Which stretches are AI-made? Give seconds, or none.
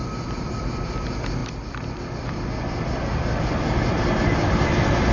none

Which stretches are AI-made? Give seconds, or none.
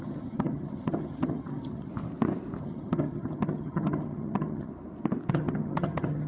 0.0-1.9 (vocoder, HiFi-GAN); 2.6-4.7; 5.3-6.3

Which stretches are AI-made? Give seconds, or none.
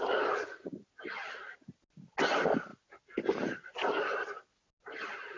none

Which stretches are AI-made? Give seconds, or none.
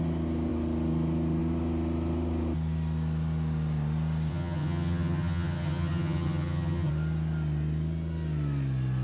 4.3-6.9 (vocoder, HiFi-GAN)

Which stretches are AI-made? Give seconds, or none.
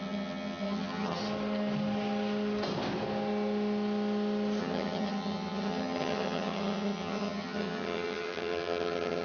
0.0-1.2 (vocoder, HiFi-GAN); 4.6-9.2